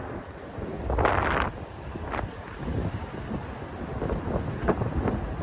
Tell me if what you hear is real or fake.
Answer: real